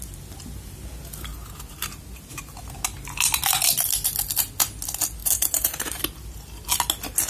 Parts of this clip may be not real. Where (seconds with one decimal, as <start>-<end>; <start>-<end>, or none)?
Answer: 1.3-2.5; 5.2-6.0